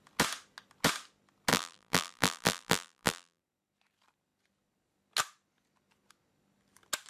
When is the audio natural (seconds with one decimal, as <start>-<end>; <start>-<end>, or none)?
0.0-1.5; 3.4-7.1